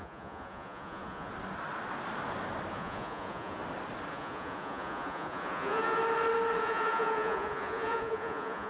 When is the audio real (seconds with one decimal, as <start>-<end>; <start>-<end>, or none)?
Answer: 1.3-2.7; 3.6-4.1; 6.0-6.6